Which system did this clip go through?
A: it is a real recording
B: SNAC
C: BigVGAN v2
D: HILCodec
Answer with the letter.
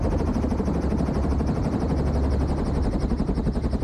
A